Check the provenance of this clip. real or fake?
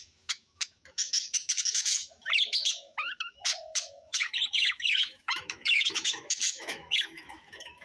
fake